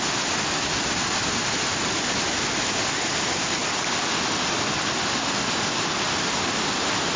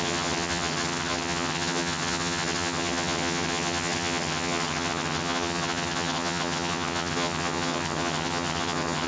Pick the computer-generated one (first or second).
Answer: second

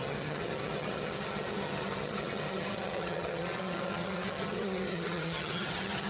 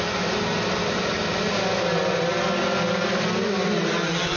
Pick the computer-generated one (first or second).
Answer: first